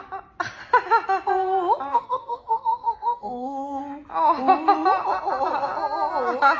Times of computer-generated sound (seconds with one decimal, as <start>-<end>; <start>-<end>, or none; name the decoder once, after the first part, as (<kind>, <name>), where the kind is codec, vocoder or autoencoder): 1.9-3.8 (codec, SNAC)